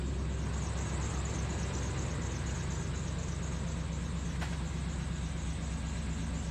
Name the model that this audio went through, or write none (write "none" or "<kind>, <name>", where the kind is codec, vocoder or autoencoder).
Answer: none